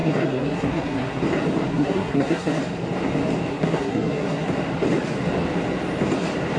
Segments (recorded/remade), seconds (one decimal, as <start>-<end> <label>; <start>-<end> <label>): 0.0-1.2 remade; 1.2-1.7 recorded; 1.7-2.6 remade; 2.6-3.5 recorded; 3.5-4.5 remade; 4.5-6.6 recorded